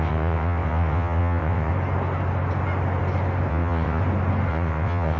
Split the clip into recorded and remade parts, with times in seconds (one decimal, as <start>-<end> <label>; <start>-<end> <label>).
0.0-1.7 remade; 1.7-3.5 recorded; 3.5-4.0 remade; 4.0-4.5 recorded; 4.5-5.2 remade